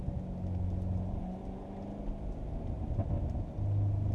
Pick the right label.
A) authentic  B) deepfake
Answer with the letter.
A